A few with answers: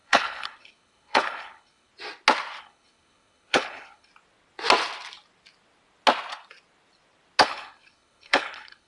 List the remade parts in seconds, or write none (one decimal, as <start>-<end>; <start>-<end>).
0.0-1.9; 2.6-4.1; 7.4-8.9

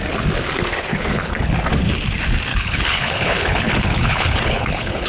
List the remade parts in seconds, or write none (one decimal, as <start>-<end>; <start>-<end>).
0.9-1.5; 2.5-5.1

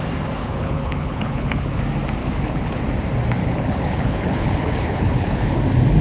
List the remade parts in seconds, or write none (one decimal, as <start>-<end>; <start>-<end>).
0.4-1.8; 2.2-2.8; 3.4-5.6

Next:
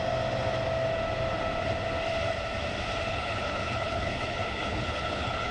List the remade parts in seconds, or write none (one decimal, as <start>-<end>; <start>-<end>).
3.1-5.5

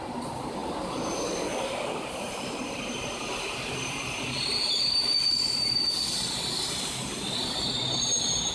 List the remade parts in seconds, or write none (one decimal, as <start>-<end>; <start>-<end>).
none